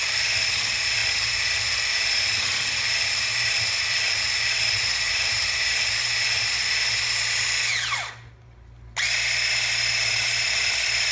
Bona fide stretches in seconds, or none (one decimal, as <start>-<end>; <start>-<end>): 0.0-11.1